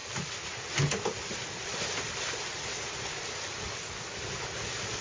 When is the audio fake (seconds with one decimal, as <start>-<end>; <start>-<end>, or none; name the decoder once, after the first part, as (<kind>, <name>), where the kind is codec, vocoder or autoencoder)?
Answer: none